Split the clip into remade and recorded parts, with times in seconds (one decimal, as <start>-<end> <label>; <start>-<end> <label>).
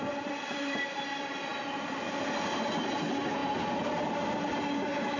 0.0-5.2 recorded